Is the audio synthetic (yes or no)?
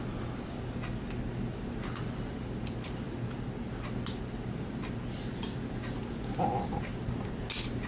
no